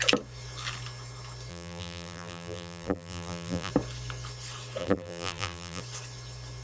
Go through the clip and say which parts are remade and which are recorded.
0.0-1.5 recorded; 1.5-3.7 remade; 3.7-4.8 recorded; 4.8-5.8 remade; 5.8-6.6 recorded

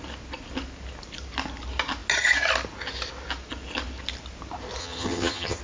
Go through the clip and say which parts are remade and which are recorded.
0.0-4.8 recorded; 4.8-5.6 remade

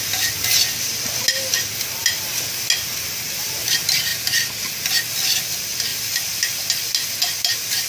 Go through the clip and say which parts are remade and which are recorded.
0.0-7.9 recorded

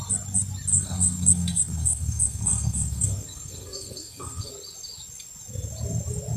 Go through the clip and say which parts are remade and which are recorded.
0.0-0.7 recorded; 0.7-4.5 remade; 4.5-6.4 recorded

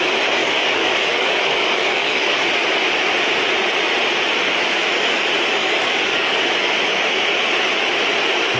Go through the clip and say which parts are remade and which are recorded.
0.0-0.4 recorded; 0.4-2.5 remade; 2.5-5.8 recorded; 5.8-6.4 remade; 6.4-8.6 recorded

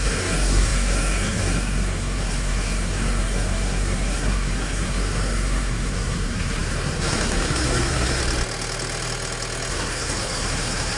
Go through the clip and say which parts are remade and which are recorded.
0.0-8.2 remade; 8.2-9.7 recorded; 9.7-11.0 remade

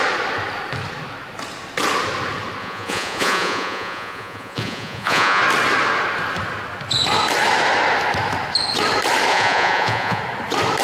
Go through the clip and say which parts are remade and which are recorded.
0.0-2.6 recorded; 2.6-5.4 remade; 5.4-9.3 recorded; 9.3-10.2 remade; 10.2-10.8 recorded

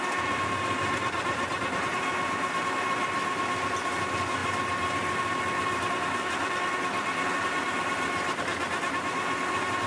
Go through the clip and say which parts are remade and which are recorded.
0.0-9.9 recorded